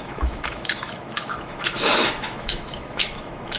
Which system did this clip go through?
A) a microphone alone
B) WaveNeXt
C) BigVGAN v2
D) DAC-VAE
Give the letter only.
D